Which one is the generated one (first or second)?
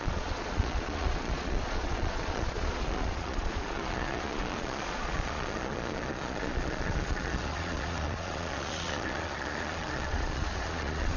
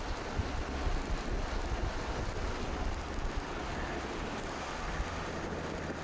first